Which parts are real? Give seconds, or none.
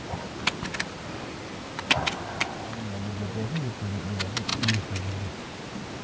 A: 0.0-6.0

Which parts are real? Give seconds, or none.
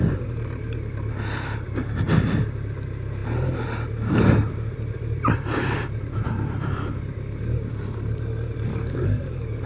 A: 0.0-8.7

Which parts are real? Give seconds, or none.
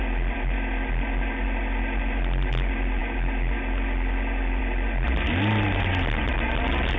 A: 0.0-7.0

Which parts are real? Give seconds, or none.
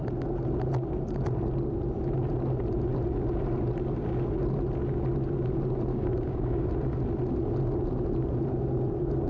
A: 0.0-5.9; 6.7-9.3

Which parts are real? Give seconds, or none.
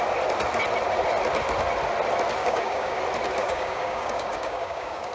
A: 0.0-2.4; 3.0-3.4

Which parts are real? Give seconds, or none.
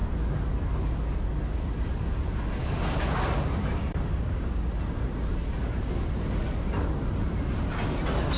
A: 0.0-3.8; 4.5-8.4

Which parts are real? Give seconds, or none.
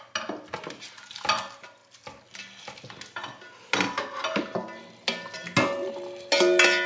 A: 0.0-6.9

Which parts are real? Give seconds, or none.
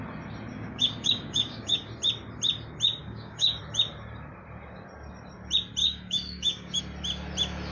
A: 0.0-0.5; 1.9-3.0; 3.6-5.8; 6.8-7.7